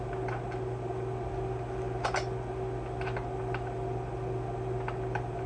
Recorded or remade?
recorded